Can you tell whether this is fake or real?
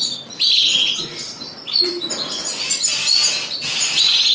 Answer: real